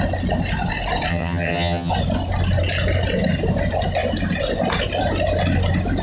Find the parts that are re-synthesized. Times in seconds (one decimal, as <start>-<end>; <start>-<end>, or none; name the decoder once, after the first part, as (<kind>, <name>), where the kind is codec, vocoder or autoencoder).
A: 1.1-1.9 (vocoder, HiFi-GAN)